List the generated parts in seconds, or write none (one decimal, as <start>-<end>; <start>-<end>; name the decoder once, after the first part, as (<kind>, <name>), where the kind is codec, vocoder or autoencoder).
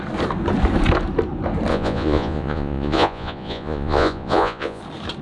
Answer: 1.7-4.8 (vocoder, Vocos)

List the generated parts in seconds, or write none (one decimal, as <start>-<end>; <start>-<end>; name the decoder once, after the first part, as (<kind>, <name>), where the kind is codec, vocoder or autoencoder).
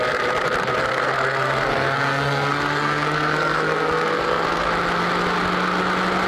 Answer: 0.9-4.7 (codec, SNAC)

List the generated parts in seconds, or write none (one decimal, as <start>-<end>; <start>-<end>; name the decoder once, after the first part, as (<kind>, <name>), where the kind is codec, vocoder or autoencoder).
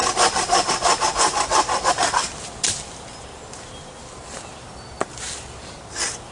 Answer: none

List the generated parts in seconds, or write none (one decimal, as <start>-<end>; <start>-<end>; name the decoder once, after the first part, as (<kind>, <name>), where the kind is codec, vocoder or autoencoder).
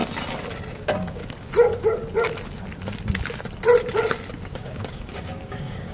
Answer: 0.7-1.2 (codec, DAC); 4.4-5.9